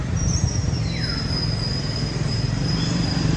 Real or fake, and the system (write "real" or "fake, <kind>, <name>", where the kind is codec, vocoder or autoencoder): fake, vocoder, BigVGAN v2